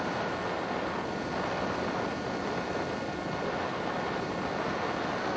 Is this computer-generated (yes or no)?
no